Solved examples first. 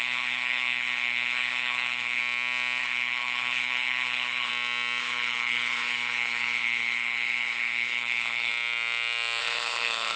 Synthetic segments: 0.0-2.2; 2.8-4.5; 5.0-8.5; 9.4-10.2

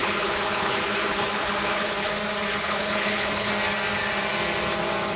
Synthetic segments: 0.0-2.1; 2.5-3.5

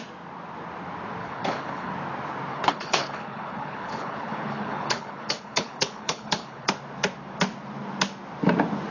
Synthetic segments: 1.2-1.9; 2.5-6.7

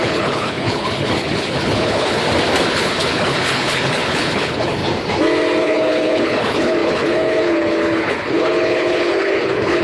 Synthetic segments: 0.0-2.2; 2.7-4.8; 5.6-9.8

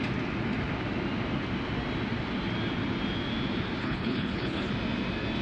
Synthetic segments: 3.8-4.7